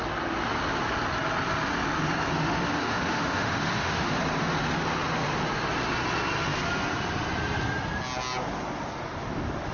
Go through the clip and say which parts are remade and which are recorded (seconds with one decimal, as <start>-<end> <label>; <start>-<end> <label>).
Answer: 0.0-2.3 recorded; 2.3-4.2 remade; 4.2-9.7 recorded